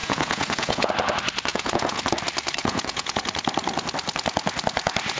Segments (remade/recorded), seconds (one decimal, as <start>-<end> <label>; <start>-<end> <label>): 0.0-0.9 remade; 0.9-1.5 recorded; 1.5-2.0 remade; 2.0-2.6 recorded; 2.6-3.2 remade; 3.2-5.2 recorded